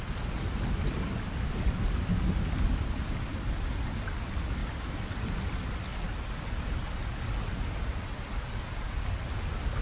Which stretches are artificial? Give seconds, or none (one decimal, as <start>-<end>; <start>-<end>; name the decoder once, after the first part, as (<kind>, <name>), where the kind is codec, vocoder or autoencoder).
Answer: none